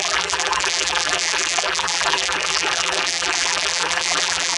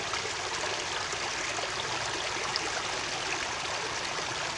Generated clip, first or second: first